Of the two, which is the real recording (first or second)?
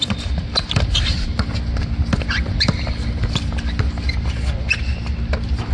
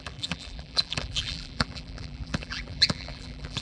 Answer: first